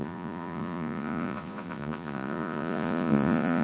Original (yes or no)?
no